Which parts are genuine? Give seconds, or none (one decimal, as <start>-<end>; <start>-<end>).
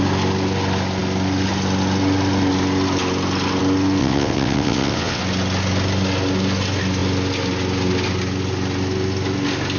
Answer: 0.0-4.0; 5.2-9.8